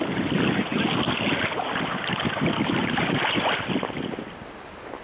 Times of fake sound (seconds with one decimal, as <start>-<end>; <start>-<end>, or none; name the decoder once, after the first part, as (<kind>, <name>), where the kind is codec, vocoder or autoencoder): none